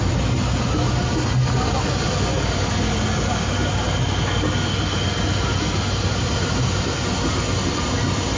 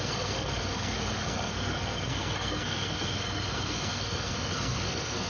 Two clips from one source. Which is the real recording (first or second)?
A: first